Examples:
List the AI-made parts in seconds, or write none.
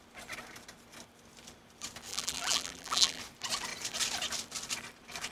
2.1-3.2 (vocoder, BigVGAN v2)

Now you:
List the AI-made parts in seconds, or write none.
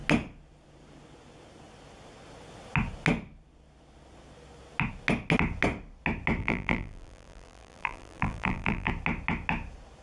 6.4-8.9 (vocoder, BigVGAN v2)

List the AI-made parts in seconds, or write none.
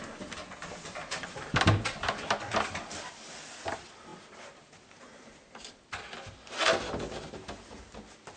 none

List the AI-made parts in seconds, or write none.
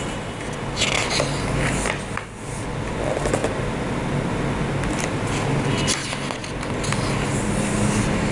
none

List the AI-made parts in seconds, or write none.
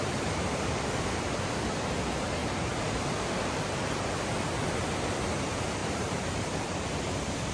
2.4-4.4 (vocoder, BigVGAN v2); 5.8-6.8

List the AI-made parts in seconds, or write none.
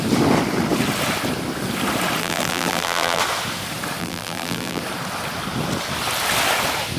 2.2-3.2 (vocoder, BigVGAN v2); 4.0-4.8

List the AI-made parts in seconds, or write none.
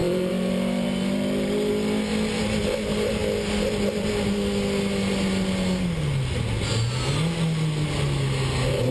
0.0-1.7 (vocoder, BigVGAN v2)